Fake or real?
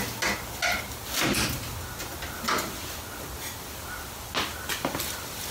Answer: real